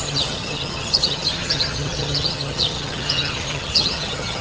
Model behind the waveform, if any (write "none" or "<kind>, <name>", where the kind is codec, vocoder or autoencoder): vocoder, HiFi-GAN